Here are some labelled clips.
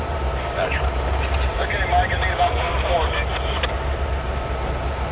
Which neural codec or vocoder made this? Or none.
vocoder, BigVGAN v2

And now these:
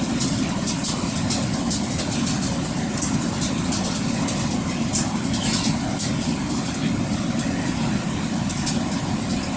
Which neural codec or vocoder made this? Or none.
none